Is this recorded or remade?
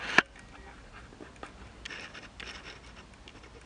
recorded